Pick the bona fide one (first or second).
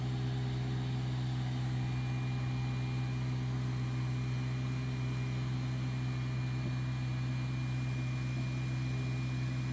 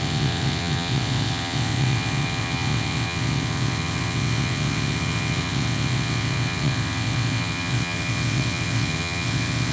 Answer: first